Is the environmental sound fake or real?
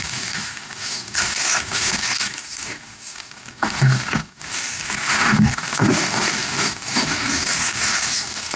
fake